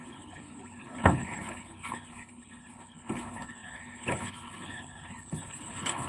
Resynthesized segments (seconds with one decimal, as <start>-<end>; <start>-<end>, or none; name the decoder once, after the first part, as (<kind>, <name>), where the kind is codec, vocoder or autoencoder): 0.0-6.1 (codec, HILCodec)